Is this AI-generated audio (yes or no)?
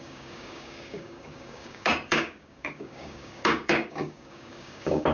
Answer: yes